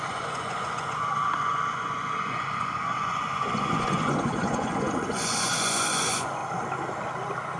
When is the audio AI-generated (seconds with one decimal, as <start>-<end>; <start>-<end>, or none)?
0.0-6.4